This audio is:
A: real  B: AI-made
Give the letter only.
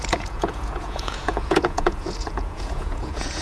B